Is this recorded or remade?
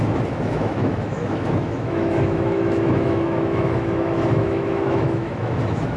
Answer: remade